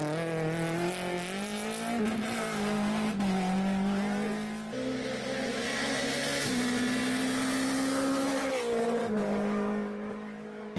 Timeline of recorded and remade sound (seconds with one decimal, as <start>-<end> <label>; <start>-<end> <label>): 0.0-9.0 recorded; 9.0-10.8 remade